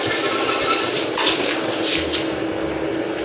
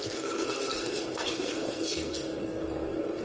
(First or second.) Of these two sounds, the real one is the first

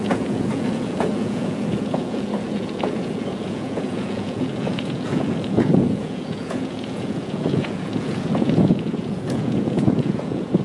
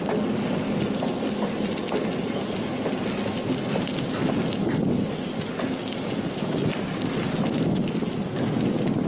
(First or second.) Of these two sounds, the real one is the second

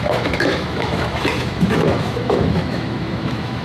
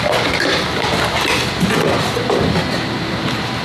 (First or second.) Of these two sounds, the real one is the second